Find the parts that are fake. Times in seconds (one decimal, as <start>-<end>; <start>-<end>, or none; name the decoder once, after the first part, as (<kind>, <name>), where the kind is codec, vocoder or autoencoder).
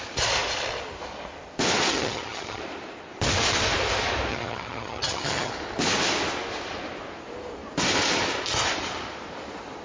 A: 1.9-2.6 (vocoder, HiFi-GAN); 4.3-5.5